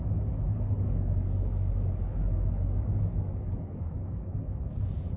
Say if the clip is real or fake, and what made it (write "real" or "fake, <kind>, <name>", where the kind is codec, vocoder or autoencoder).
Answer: fake, codec, DAC